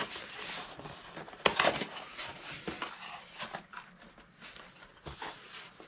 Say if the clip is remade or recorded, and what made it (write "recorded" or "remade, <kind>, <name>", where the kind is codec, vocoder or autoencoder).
recorded